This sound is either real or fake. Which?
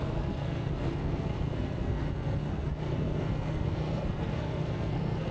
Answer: fake